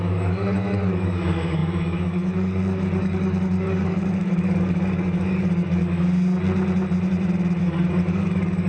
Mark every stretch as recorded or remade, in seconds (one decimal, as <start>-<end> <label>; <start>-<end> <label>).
0.0-5.8 remade; 5.8-7.6 recorded; 7.6-8.7 remade